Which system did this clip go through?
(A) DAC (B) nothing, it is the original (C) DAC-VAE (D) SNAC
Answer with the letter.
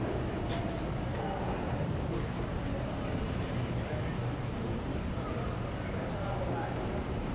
B